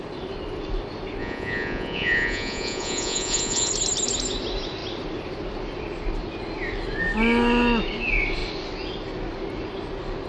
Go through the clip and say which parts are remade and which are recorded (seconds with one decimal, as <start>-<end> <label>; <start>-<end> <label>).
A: 0.0-1.2 recorded; 1.2-3.7 remade; 3.7-10.3 recorded